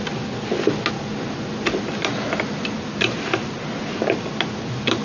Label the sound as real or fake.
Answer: real